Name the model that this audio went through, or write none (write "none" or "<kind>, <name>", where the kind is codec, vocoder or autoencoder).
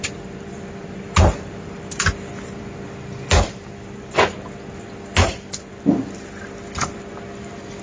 none